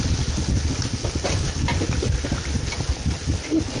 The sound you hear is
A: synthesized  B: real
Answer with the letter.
B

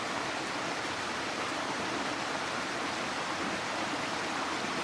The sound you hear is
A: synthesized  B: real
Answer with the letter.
B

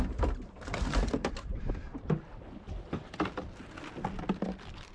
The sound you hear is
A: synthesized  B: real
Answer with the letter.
B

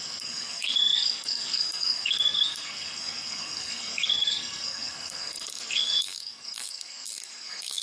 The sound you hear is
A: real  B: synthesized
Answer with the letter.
B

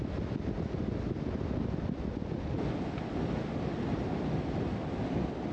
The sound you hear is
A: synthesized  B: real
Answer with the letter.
B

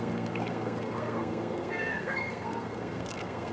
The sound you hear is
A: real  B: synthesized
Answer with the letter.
B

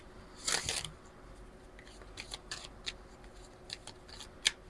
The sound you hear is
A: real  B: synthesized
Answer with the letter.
A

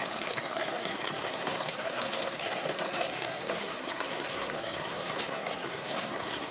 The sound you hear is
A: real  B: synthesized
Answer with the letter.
B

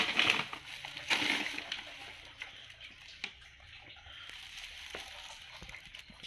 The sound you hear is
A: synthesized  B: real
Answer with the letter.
B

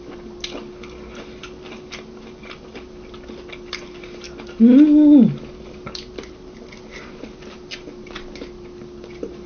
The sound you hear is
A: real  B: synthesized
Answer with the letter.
A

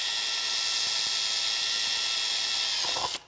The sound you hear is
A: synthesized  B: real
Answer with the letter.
B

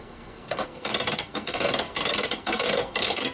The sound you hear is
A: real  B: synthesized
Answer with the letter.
B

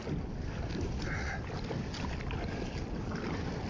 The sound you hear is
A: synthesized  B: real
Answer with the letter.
B